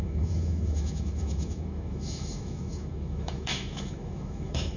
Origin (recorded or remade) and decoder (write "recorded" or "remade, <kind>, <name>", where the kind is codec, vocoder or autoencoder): remade, autoencoder, DAC-VAE